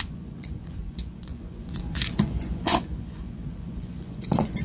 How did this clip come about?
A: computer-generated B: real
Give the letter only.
A